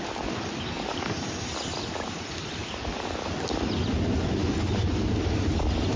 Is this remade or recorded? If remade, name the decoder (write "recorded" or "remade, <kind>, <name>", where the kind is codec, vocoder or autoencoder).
recorded